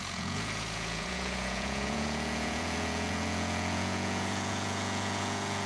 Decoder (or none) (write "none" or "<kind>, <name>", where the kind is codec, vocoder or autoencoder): vocoder, Vocos